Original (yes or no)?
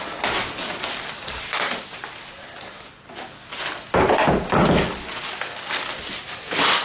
yes